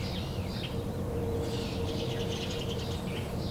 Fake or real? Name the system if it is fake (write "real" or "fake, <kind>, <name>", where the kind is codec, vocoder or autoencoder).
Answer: real